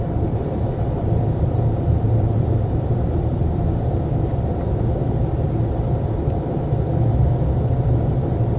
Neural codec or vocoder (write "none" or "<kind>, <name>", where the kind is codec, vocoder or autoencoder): vocoder, BigVGAN v2